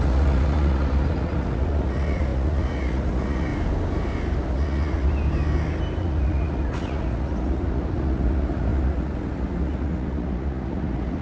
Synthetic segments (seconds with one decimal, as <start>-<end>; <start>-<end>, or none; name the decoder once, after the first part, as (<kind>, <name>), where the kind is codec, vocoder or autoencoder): 0.0-3.5 (vocoder, Vocos); 4.5-5.1; 6.0-11.2